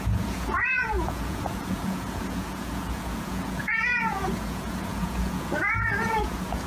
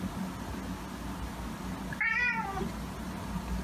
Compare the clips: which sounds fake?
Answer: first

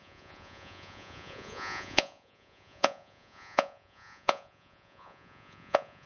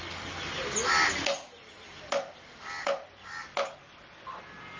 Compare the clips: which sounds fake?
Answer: first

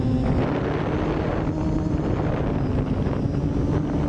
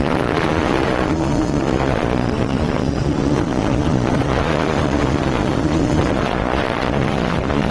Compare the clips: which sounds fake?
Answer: second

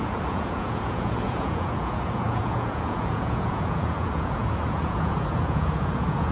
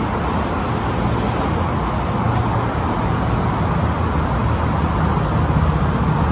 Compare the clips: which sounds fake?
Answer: first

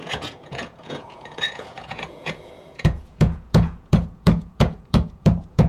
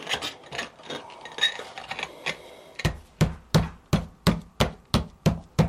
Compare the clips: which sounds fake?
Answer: first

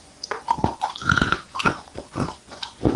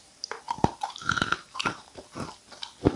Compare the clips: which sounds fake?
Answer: first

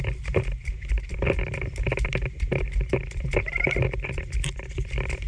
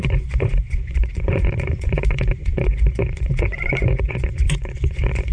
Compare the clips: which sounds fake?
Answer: second